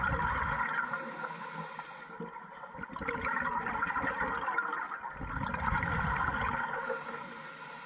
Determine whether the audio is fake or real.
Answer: real